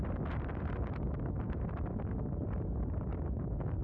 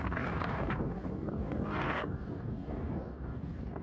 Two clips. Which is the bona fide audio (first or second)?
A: first